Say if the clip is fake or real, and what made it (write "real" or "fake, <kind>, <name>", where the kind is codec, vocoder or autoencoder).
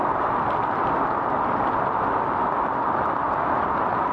real